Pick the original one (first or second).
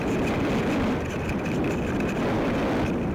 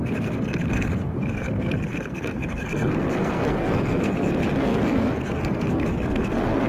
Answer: first